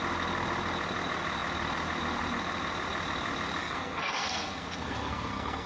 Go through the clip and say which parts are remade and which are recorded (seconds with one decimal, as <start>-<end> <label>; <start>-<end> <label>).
0.0-3.6 recorded; 3.6-5.7 remade